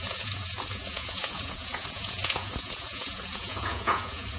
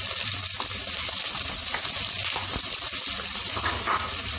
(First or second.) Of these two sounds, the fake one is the first